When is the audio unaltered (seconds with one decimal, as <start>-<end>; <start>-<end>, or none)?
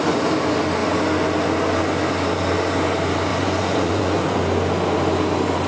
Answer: 0.0-3.3; 4.4-5.7